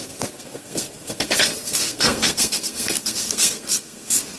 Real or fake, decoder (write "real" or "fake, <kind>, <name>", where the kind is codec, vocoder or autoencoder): fake, codec, SNAC